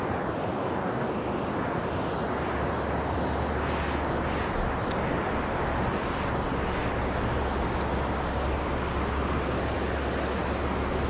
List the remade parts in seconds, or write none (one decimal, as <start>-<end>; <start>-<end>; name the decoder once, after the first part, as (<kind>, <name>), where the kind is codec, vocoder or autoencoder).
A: 0.5-1.1 (codec, DAC)